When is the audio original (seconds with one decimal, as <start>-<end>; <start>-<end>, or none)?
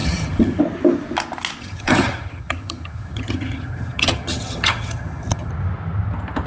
0.6-1.6; 5.5-6.5